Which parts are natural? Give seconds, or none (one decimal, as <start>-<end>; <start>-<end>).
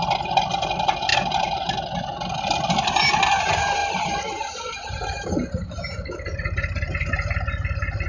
0.0-3.8; 4.7-8.1